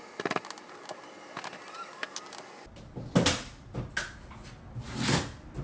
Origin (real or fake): real